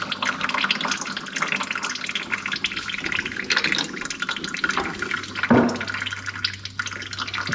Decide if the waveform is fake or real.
real